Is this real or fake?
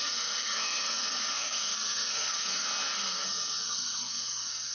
fake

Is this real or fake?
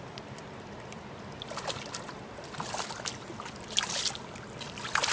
real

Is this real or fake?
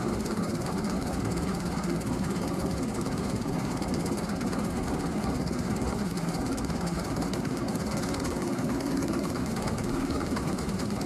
fake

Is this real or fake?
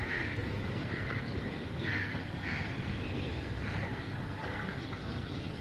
fake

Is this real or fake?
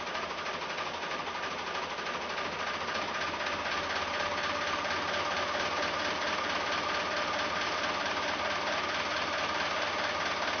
real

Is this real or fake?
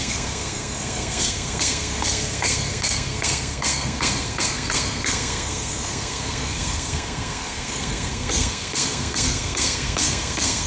fake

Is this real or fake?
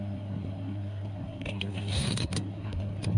fake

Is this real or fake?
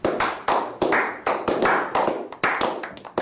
real